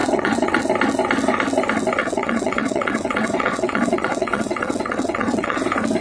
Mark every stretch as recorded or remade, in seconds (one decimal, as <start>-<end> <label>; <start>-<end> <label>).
0.0-0.6 remade; 0.6-2.0 recorded; 2.0-5.6 remade; 5.6-6.0 recorded